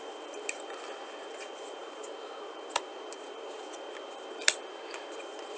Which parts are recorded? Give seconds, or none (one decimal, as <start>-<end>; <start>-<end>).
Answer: 0.0-1.8; 3.6-5.6